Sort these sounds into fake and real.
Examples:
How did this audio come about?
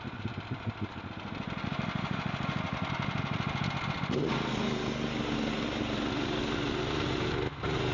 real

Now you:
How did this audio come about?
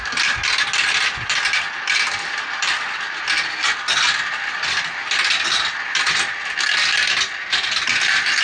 real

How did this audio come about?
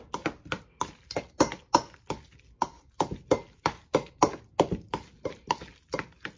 real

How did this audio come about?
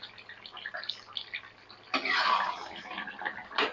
real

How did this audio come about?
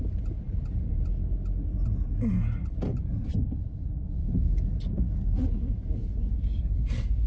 real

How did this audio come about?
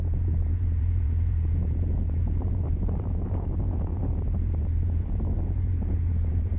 fake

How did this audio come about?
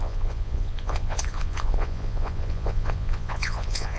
fake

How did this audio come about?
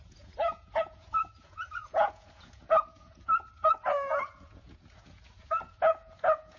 fake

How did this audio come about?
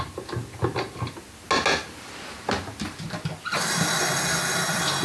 real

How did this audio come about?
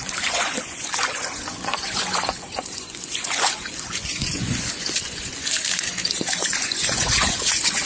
fake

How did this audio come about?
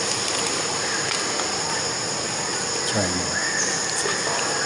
real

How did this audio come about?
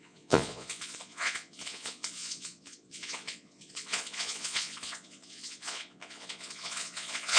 fake